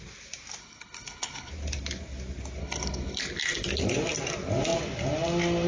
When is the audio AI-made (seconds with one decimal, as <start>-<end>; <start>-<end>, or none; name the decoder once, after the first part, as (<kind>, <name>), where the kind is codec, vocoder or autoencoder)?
0.6-1.5 (codec, HILCodec); 2.6-3.2